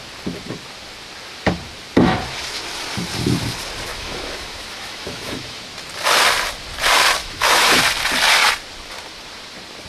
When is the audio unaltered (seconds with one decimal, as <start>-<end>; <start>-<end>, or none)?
0.0-3.9; 5.6-7.2; 7.8-9.9